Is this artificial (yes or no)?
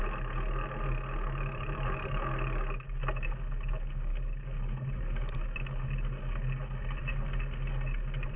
no